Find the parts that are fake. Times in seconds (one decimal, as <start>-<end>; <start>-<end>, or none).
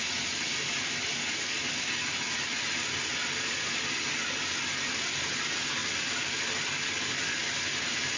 none